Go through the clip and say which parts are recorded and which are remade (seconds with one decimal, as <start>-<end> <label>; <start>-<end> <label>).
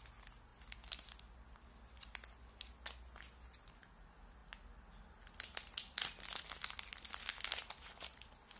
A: 0.0-8.6 recorded